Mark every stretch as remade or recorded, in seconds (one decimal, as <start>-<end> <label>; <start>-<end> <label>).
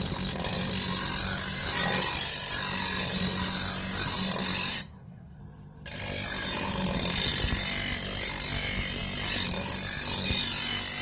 0.0-4.7 recorded; 4.7-5.4 remade; 5.4-11.0 recorded